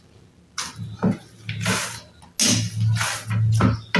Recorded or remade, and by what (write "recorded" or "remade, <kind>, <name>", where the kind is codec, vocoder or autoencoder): recorded